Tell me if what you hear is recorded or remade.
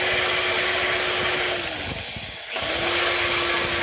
recorded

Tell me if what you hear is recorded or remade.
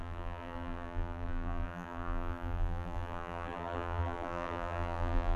remade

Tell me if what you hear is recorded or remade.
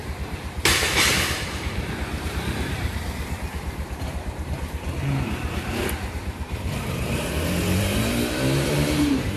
remade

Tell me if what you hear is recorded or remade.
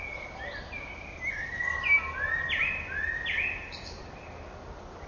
recorded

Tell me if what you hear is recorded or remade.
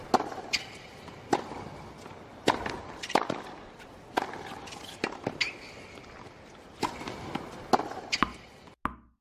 recorded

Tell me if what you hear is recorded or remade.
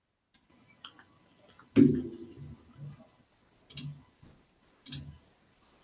recorded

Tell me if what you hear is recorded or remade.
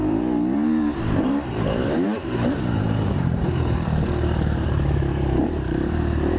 remade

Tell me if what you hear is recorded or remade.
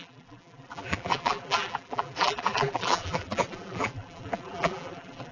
remade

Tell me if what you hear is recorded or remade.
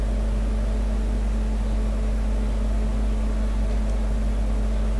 recorded